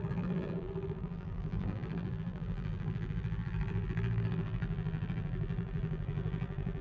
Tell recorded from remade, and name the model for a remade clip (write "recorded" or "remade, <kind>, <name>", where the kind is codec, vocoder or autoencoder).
remade, vocoder, BigVGAN v2